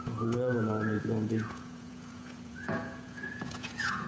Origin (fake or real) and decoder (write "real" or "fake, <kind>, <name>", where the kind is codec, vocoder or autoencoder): fake, vocoder, Vocos